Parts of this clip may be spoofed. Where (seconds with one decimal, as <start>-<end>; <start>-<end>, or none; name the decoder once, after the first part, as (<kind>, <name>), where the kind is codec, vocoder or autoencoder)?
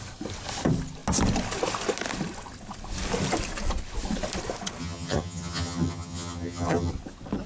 4.8-6.9 (vocoder, HiFi-GAN)